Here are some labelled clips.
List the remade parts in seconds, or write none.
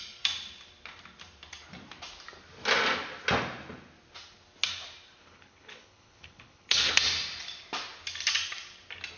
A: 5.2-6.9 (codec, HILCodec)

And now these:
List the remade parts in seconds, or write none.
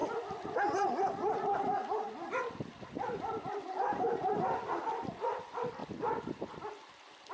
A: none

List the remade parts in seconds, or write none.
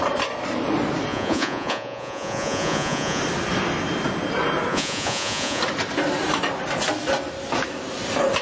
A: 1.1-3.2 (vocoder, Vocos); 4.7-5.6